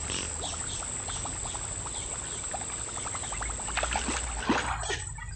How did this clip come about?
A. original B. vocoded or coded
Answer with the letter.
A